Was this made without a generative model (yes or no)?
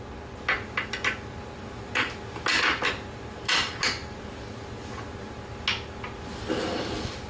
yes